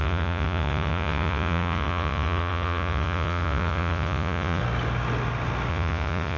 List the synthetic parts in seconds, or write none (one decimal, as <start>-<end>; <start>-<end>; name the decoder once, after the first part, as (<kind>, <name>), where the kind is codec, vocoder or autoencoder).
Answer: 0.0-4.6 (vocoder, Vocos); 5.7-6.4

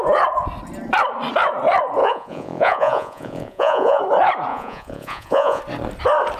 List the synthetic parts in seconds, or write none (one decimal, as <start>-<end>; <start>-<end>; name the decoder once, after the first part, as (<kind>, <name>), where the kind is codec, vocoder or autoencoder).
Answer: 2.0-4.0 (vocoder, Vocos); 4.5-5.6

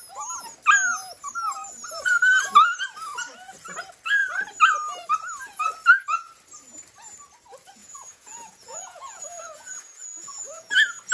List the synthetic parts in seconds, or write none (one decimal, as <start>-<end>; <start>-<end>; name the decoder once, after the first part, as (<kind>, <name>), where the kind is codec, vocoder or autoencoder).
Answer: 7.8-10.7 (vocoder, Vocos)

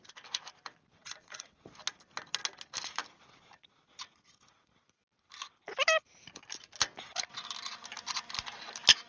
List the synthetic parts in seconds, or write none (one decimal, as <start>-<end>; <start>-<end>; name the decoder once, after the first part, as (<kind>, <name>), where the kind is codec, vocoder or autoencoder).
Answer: 1.0-1.7 (vocoder, Vocos)

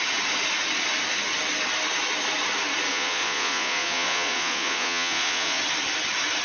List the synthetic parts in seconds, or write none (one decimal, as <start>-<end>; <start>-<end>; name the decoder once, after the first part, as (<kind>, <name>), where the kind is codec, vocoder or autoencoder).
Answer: 2.9-5.6 (vocoder, Vocos)